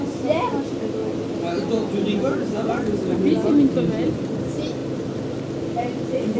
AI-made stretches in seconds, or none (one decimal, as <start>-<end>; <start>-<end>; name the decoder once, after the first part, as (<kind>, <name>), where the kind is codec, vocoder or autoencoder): 0.0-1.0 (vocoder, BigVGAN v2); 4.1-4.8; 5.7-6.4